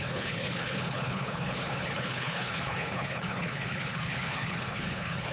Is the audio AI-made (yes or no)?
yes